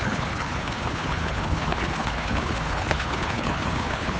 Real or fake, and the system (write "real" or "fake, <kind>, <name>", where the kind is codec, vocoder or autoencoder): fake, codec, HILCodec